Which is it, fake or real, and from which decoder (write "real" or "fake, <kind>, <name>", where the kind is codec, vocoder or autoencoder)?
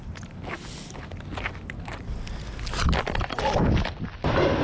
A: real